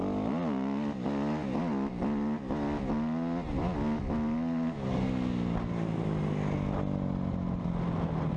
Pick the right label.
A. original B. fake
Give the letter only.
A